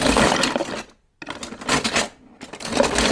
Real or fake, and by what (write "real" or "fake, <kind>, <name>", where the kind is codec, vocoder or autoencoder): real